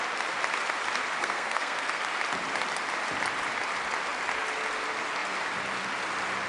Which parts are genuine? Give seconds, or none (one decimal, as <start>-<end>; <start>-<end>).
0.0-1.2; 2.0-6.5